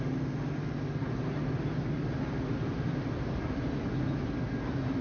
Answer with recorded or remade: recorded